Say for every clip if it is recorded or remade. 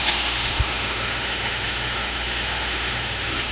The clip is remade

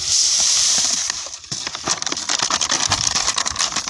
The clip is remade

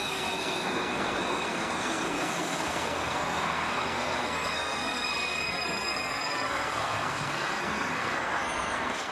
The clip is remade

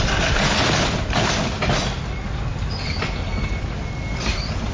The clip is recorded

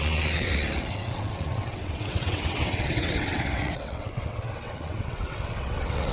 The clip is remade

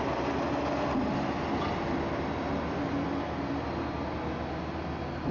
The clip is recorded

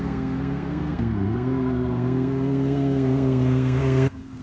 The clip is remade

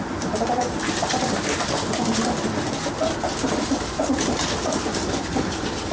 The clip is recorded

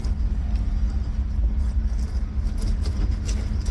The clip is recorded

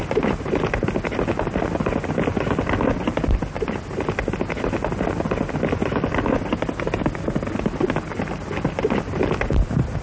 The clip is recorded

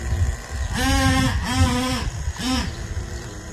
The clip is recorded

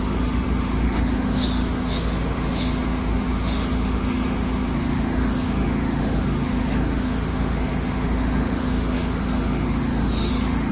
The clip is remade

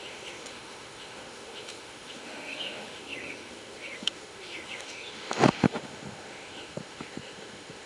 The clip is remade